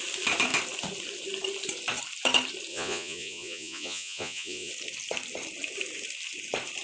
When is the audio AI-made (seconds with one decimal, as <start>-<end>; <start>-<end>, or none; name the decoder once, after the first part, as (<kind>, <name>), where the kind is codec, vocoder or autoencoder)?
2.7-4.7 (vocoder, Vocos)